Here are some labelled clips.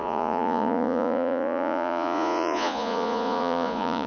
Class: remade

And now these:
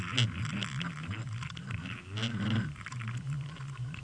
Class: recorded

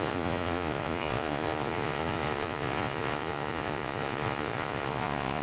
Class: remade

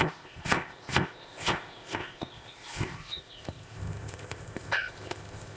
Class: remade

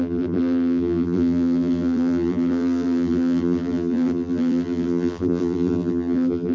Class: remade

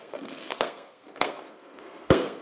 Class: remade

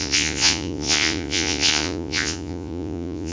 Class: remade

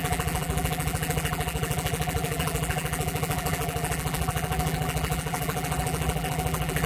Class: remade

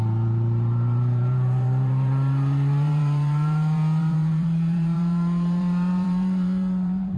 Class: remade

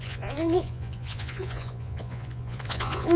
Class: remade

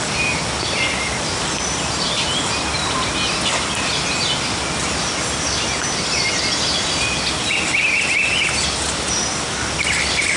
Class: recorded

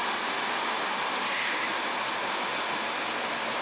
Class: recorded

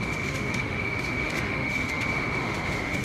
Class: remade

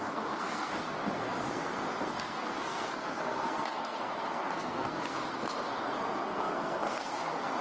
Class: remade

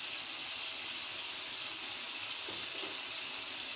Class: recorded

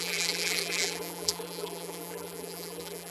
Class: remade